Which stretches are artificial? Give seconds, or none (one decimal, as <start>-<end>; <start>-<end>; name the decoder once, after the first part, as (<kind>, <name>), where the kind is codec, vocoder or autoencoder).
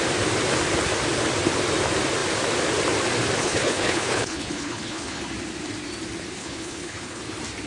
3.4-5.2 (codec, HILCodec); 6.4-7.2